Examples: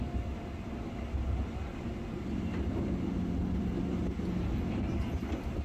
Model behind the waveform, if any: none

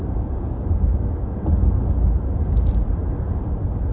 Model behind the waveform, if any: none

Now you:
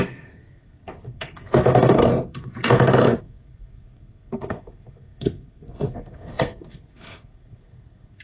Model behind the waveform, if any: codec, SNAC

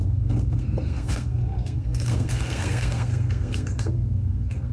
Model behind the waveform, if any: codec, SNAC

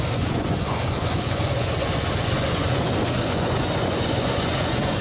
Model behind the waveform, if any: vocoder, Vocos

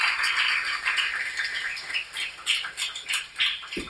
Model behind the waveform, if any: none